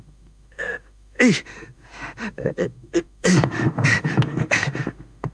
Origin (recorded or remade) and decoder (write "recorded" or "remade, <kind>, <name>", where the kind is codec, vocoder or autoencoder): remade, autoencoder, DAC-VAE